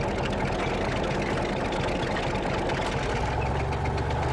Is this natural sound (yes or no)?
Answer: yes